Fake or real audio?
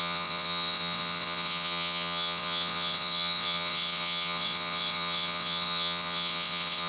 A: fake